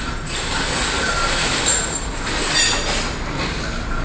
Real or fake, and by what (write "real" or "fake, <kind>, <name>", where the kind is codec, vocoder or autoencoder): real